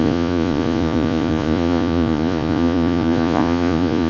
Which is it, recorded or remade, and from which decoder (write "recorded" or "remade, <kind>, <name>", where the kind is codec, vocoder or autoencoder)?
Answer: remade, vocoder, Vocos